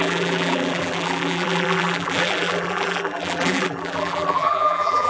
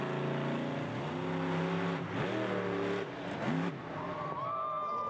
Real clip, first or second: second